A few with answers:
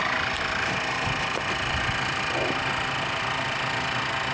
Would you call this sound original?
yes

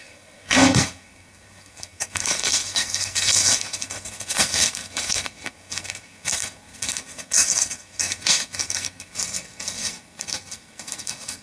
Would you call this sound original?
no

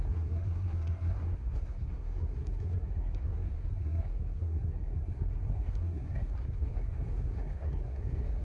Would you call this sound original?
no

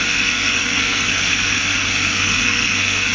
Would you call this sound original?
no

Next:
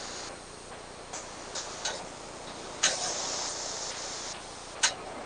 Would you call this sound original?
yes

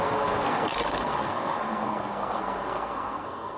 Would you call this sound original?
no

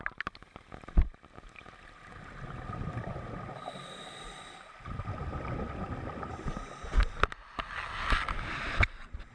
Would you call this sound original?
yes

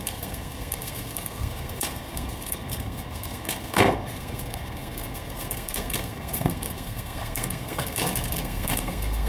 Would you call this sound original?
no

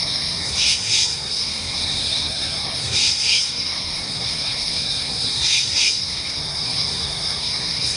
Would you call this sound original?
no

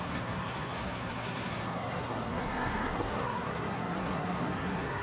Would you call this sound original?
no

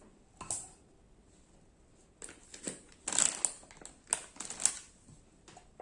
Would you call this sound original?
yes